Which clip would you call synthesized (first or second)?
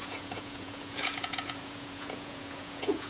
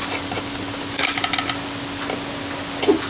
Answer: first